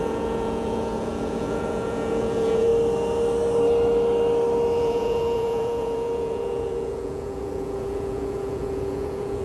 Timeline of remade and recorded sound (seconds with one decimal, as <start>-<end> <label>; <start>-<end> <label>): 0.0-2.7 remade; 2.7-4.8 recorded; 4.8-9.4 remade